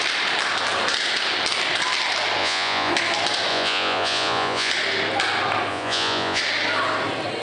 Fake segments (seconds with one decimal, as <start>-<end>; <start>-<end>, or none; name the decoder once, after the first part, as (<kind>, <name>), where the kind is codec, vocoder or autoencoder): 2.4-2.9 (vocoder, Vocos); 3.5-4.7; 5.7-6.4